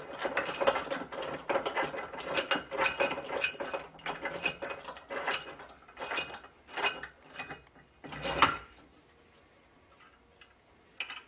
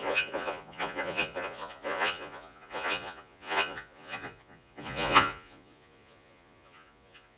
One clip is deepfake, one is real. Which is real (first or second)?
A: first